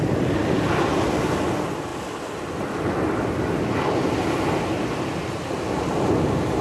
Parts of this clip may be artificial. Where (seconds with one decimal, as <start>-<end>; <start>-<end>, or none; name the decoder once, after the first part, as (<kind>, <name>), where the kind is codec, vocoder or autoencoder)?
none